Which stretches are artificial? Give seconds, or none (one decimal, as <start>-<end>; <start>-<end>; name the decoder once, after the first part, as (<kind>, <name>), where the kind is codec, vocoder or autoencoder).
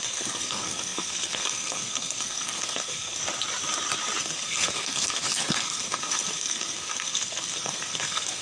0.0-3.2 (codec, SNAC); 4.2-8.4